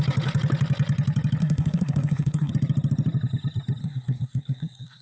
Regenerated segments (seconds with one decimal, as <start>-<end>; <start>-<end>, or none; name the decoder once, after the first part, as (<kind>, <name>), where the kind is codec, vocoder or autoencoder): 1.4-2.5 (codec, SNAC); 3.8-5.0